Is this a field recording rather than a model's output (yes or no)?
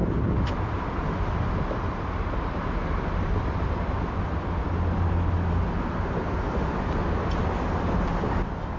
yes